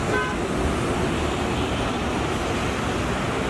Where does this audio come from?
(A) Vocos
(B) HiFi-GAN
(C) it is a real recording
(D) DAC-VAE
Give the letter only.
C